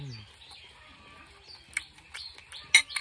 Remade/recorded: recorded